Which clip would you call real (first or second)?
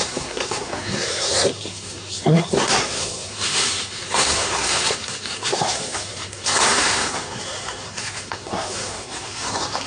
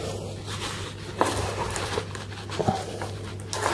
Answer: second